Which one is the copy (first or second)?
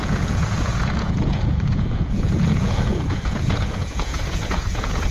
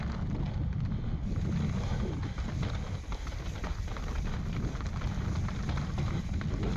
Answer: first